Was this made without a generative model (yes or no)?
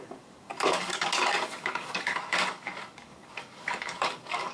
no